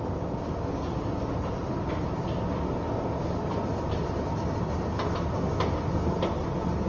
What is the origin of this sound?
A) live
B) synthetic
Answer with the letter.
A